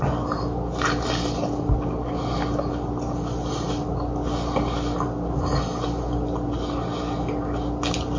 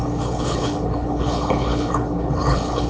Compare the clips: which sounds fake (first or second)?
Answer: second